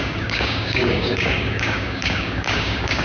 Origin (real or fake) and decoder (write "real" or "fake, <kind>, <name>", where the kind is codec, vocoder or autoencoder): fake, codec, DAC